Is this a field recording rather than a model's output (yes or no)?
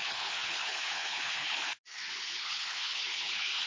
no